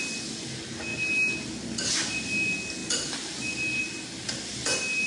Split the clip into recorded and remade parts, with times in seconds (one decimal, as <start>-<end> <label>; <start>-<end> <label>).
0.0-5.1 recorded

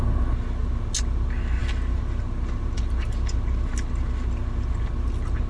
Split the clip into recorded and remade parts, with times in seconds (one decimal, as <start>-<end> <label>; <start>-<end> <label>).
0.0-5.5 recorded

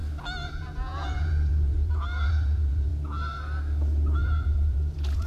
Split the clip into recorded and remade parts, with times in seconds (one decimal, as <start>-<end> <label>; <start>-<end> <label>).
0.0-0.5 recorded; 0.5-2.9 remade; 2.9-4.2 recorded; 4.2-5.3 remade

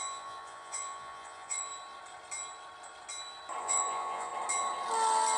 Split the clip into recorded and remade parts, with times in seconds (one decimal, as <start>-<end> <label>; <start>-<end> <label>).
0.0-1.7 remade; 1.7-3.6 recorded; 3.6-4.3 remade; 4.3-5.4 recorded

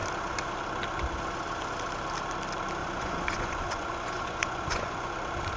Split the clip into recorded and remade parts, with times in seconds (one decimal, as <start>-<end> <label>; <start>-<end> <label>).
0.0-2.8 recorded; 2.8-5.1 remade; 5.1-5.6 recorded

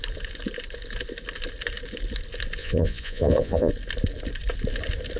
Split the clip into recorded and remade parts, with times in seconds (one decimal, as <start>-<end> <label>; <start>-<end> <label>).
0.0-2.6 recorded; 2.6-3.7 remade; 3.7-5.2 recorded

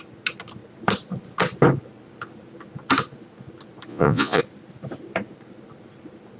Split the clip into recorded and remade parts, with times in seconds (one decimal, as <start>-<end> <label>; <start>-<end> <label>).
0.0-3.9 recorded; 3.9-4.4 remade; 4.4-6.4 recorded